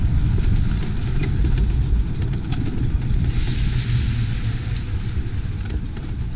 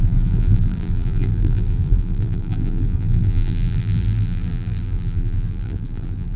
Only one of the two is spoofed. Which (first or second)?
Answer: second